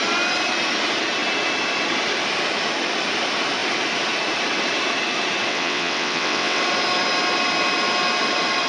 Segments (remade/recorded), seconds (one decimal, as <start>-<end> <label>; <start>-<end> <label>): 0.0-5.5 recorded; 5.5-6.6 remade; 6.6-8.7 recorded